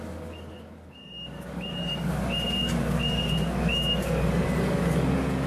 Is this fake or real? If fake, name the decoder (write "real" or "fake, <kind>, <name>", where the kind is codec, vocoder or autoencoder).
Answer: fake, codec, DAC